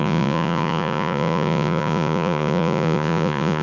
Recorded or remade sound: remade